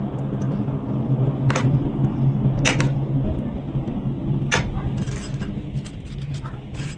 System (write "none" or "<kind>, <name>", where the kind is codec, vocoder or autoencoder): none